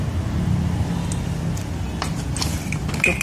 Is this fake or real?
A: real